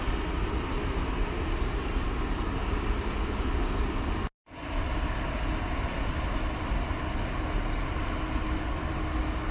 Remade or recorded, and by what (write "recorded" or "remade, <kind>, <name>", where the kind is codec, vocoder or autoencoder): recorded